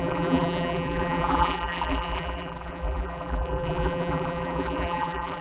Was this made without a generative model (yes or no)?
no